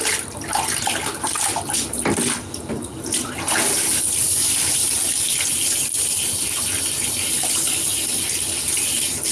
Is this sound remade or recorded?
recorded